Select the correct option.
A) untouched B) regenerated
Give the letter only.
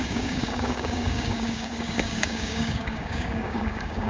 B